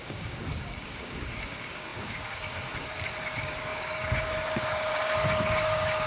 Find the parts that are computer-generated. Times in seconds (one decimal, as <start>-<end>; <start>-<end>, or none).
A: 0.0-6.1